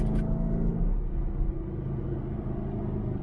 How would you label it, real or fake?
real